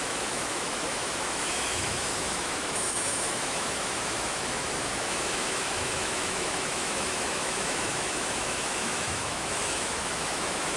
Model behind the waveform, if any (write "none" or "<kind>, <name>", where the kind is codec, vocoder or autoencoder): autoencoder, DAC-VAE